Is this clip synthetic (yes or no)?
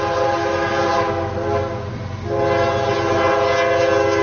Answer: no